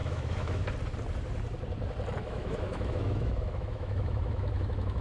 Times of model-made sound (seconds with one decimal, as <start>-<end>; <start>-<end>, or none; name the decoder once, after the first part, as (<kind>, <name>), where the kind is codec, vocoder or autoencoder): 0.0-0.7 (autoencoder, DAC-VAE); 2.2-5.0